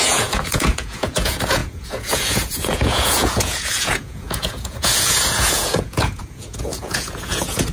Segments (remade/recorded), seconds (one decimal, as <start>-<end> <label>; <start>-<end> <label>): 0.0-7.7 remade